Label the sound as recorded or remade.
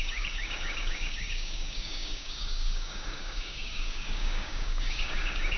remade